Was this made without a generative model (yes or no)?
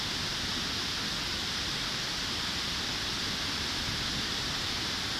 yes